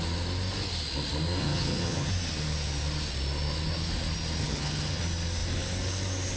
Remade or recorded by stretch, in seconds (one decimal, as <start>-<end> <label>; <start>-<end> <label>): 0.0-1.4 recorded; 1.4-2.1 remade; 2.1-4.4 recorded; 4.4-5.0 remade; 5.0-6.4 recorded